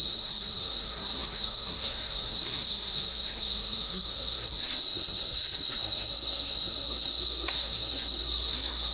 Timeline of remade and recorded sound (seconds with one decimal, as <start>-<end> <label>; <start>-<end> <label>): 0.0-8.9 remade

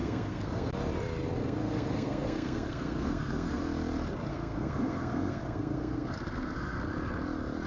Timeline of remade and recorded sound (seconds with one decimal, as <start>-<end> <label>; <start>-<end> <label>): 0.0-0.7 remade; 0.7-1.4 recorded; 1.4-3.6 remade; 3.6-4.3 recorded; 4.3-6.8 remade; 6.8-7.7 recorded

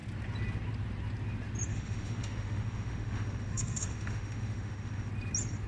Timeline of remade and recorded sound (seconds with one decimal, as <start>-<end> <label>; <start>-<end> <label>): 0.0-1.7 recorded; 1.7-5.1 remade; 5.1-5.7 recorded